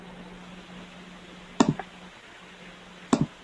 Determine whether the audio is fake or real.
real